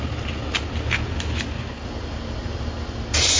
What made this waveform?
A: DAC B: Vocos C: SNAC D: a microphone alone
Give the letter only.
D